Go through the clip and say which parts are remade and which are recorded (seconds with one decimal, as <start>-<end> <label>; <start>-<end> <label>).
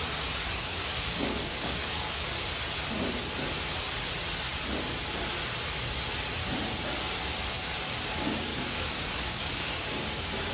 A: 0.0-0.4 recorded; 0.4-2.2 remade; 2.2-8.5 recorded; 8.5-9.8 remade; 9.8-10.5 recorded